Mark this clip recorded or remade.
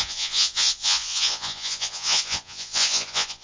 remade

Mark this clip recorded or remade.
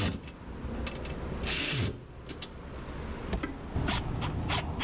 recorded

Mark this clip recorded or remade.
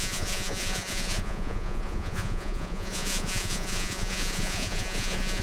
remade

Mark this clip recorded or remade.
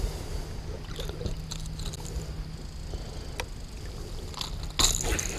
recorded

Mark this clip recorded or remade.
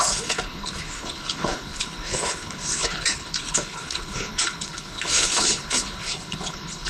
remade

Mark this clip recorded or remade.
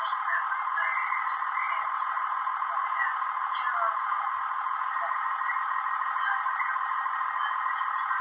recorded